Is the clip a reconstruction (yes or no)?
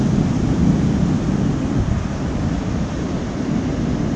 no